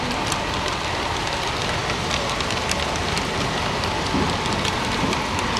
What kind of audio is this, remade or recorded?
remade